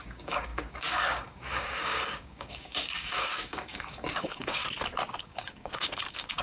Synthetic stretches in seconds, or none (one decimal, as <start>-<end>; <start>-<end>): 0.0-4.6; 5.2-6.4